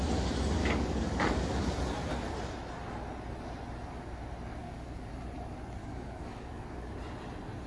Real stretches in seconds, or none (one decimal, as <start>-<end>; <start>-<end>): 0.0-0.6; 1.6-4.6; 5.1-5.8; 6.9-7.7